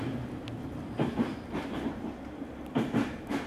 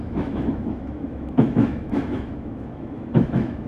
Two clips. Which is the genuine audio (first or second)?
first